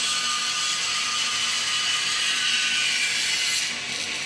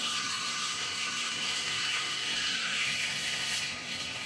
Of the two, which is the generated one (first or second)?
second